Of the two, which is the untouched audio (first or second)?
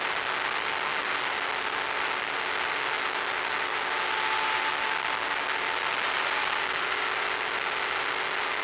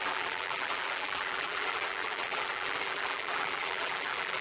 first